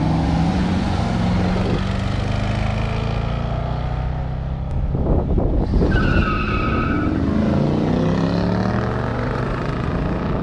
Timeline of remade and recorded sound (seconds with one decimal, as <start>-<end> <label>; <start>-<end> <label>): 0.0-0.5 recorded; 0.5-1.0 remade; 1.0-9.1 recorded; 9.1-9.9 remade; 9.9-10.4 recorded